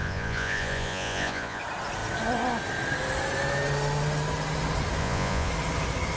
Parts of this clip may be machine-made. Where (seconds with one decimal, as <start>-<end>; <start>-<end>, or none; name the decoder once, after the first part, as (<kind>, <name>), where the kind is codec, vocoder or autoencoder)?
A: 0.0-1.6 (vocoder, Vocos); 5.0-5.5